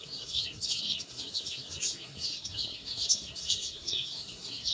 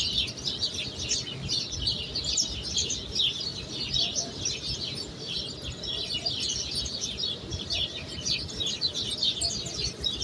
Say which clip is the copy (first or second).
first